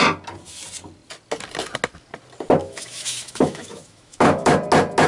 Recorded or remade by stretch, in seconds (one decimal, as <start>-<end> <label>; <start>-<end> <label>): 0.0-2.6 recorded; 2.6-4.5 remade; 4.5-5.1 recorded